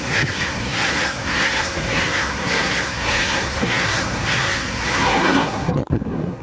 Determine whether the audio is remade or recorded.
remade